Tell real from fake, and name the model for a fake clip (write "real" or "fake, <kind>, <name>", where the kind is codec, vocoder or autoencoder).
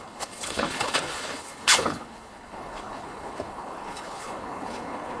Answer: fake, codec, HILCodec